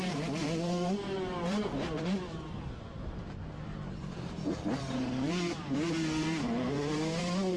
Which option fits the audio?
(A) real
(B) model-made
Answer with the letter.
B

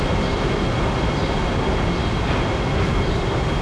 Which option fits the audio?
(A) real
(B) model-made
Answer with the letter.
A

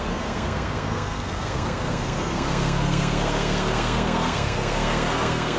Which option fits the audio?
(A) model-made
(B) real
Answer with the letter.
A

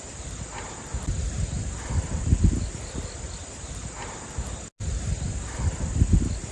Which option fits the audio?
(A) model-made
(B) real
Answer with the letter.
B